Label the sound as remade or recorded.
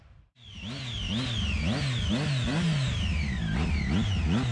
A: recorded